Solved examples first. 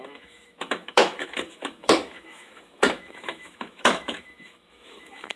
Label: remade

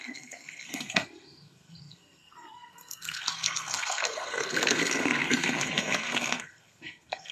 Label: remade